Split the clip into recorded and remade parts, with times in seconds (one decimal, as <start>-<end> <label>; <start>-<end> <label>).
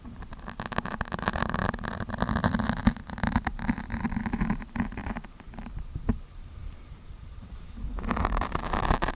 0.0-1.6 remade; 1.6-2.8 recorded; 2.8-9.2 remade